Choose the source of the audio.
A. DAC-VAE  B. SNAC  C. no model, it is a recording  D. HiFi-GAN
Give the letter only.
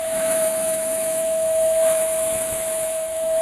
A